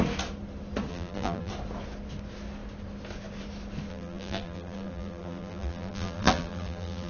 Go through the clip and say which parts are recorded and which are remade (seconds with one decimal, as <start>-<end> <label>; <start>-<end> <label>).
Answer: 0.0-0.9 recorded; 0.9-1.5 remade; 1.5-3.9 recorded; 3.9-7.1 remade